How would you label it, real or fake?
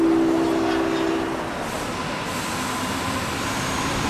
real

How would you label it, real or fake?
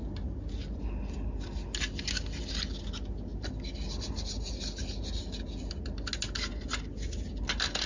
real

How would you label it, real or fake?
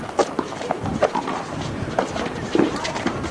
fake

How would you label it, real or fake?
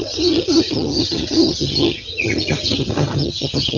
fake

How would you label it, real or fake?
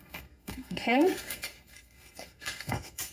fake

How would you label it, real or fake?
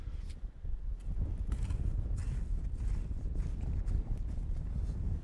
real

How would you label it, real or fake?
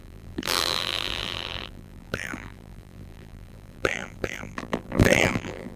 fake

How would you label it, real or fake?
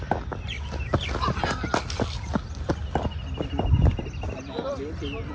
real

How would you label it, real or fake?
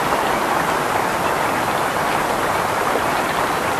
real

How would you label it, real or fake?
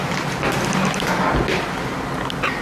real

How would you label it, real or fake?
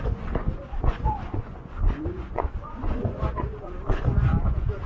fake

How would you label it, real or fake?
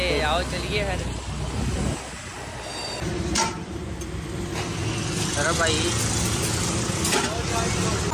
real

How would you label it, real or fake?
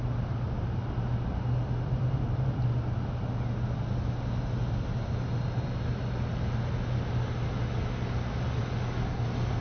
real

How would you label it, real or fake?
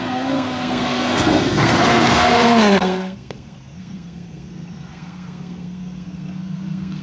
fake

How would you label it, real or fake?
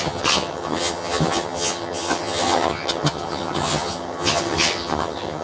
fake